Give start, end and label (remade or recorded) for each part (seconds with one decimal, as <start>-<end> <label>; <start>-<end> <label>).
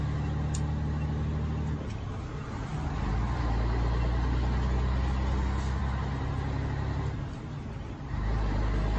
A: 0.0-9.0 recorded